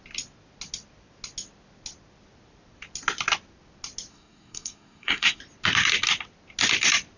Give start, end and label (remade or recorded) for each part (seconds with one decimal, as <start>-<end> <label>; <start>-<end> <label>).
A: 0.0-4.1 recorded; 4.1-5.4 remade; 5.4-7.2 recorded